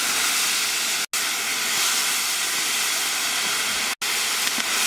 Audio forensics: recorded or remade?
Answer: recorded